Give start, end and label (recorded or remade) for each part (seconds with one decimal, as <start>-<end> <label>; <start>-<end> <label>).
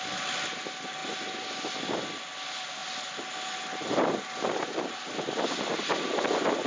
0.0-6.7 recorded